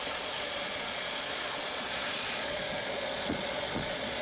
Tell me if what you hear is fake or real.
fake